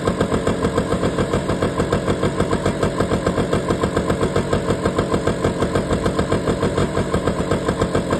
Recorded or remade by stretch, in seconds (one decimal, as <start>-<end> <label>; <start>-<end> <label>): 0.0-0.9 recorded; 0.9-1.5 remade; 1.5-6.8 recorded; 6.8-7.4 remade; 7.4-8.2 recorded